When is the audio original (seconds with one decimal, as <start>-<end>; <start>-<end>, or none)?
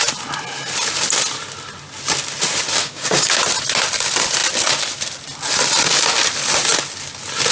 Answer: 0.0-2.8; 3.4-7.5